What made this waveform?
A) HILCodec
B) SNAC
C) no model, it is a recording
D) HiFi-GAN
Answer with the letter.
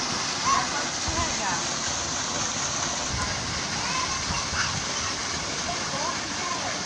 C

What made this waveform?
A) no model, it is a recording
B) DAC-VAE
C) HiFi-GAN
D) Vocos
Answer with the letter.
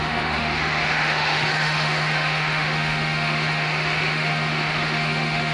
B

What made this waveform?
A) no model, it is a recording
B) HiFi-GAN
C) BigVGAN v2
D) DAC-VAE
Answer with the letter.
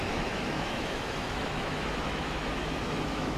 D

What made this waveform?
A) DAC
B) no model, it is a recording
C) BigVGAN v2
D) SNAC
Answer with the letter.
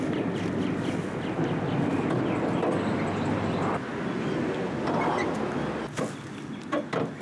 B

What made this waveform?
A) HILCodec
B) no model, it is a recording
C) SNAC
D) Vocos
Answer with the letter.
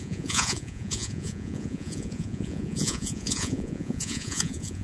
D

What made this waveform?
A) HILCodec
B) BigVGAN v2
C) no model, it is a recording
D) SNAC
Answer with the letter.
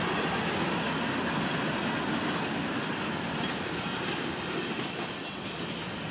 C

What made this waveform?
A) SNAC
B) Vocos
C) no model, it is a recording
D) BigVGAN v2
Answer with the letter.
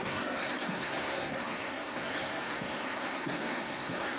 A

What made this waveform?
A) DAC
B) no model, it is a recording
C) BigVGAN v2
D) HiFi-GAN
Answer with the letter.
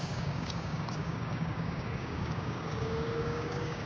A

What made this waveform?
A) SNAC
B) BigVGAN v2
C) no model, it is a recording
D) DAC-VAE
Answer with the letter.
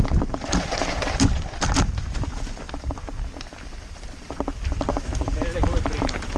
C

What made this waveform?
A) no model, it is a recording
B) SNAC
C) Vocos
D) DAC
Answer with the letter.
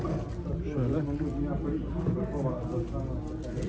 A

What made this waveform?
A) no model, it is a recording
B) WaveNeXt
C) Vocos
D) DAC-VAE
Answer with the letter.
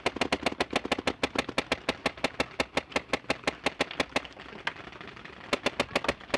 A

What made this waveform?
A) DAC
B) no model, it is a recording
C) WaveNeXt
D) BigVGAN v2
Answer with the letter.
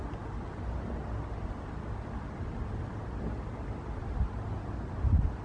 B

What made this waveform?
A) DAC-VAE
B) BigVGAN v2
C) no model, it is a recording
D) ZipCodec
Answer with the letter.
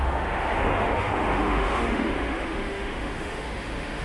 A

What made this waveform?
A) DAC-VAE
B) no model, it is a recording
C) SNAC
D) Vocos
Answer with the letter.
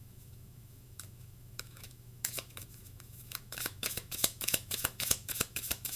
A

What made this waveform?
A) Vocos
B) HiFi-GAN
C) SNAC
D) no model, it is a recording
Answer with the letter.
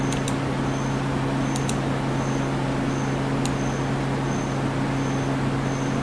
D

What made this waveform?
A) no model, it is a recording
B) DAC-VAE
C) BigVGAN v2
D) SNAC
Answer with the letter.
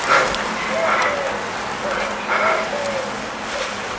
A